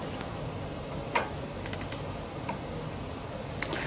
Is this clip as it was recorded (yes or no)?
yes